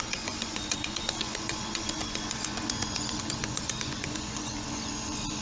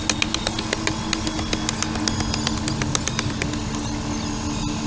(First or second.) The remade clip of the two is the first